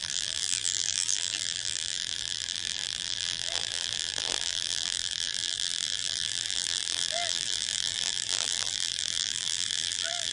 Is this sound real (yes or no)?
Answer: no